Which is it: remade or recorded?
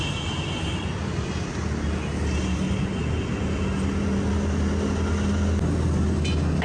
recorded